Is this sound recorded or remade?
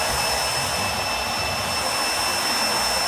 recorded